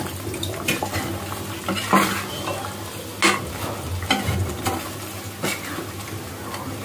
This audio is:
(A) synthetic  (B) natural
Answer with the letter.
B